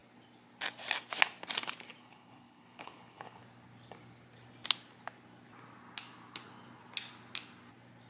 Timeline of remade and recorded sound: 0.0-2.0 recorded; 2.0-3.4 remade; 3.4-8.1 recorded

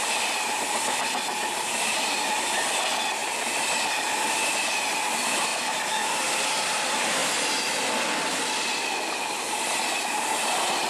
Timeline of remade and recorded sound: 0.0-5.5 recorded; 5.5-6.8 remade; 6.8-10.9 recorded

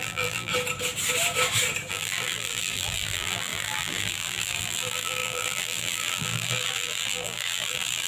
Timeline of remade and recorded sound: 0.0-0.5 remade; 0.5-1.9 recorded; 1.9-8.1 remade

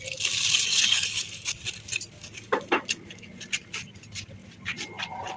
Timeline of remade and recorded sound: 0.0-0.7 recorded; 0.7-1.5 remade; 1.5-2.2 recorded; 2.2-3.3 remade; 3.3-5.4 recorded

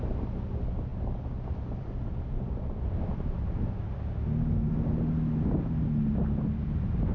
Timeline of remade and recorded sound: 0.0-7.1 recorded

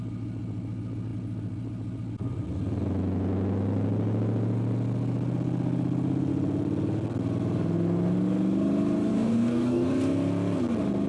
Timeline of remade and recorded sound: 0.0-9.1 recorded; 9.1-9.9 remade; 9.9-11.1 recorded